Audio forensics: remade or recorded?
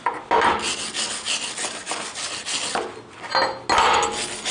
recorded